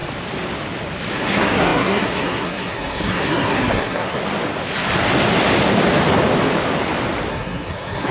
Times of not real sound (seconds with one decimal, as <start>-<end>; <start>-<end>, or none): 1.1-4.2; 7.3-8.1